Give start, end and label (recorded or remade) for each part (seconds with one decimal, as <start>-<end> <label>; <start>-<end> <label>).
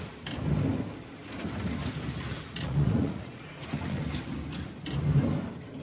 0.0-2.3 recorded; 2.3-4.0 remade; 4.0-5.8 recorded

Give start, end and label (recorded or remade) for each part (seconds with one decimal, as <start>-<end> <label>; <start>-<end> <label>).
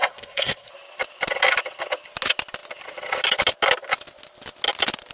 0.0-0.7 remade; 0.7-5.1 recorded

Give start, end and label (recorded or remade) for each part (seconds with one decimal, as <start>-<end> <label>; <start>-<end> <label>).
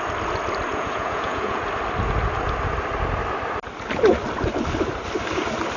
0.0-0.7 recorded; 0.7-1.6 remade; 1.6-5.8 recorded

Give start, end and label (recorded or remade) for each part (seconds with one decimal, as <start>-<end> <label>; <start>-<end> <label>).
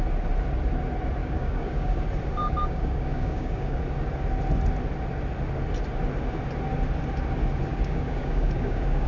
0.0-1.2 recorded; 1.2-2.0 remade; 2.0-2.4 recorded; 2.4-3.8 remade; 3.8-7.7 recorded; 7.7-9.1 remade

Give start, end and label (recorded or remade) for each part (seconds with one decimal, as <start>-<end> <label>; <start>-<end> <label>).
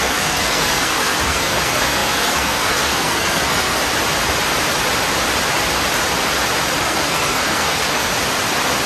0.0-3.8 remade; 3.8-6.8 recorded; 6.8-8.1 remade; 8.1-8.9 recorded